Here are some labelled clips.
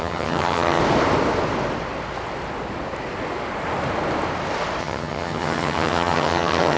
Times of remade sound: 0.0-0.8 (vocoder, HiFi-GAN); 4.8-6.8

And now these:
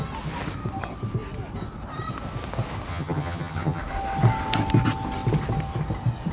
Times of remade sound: 2.9-3.8 (vocoder, HiFi-GAN)

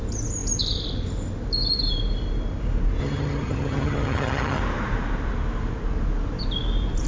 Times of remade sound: 3.0-4.6 (vocoder, HiFi-GAN)